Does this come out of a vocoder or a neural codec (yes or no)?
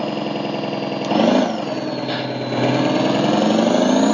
no